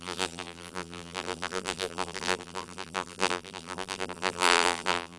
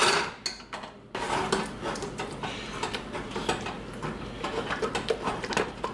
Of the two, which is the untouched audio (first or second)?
second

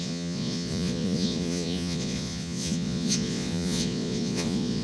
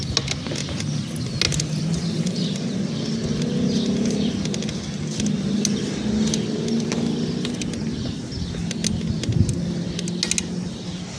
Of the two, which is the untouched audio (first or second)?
second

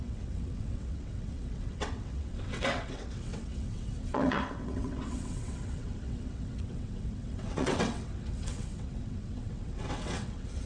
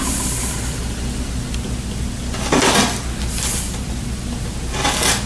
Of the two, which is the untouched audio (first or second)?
second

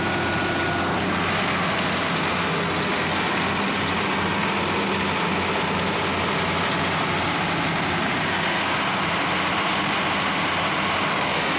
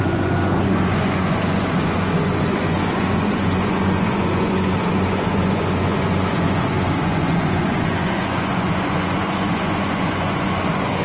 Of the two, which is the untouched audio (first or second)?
first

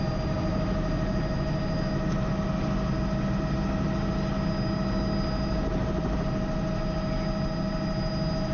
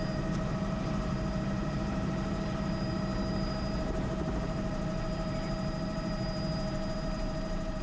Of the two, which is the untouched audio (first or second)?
first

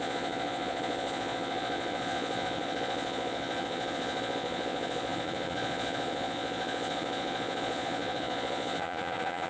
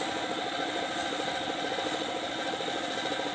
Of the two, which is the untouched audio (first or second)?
second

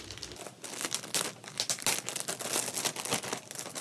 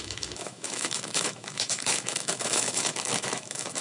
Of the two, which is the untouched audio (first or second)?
first